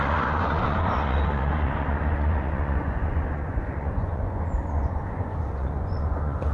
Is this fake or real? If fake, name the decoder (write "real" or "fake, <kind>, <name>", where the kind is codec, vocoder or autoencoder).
fake, vocoder, Vocos